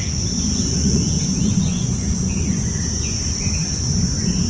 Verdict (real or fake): fake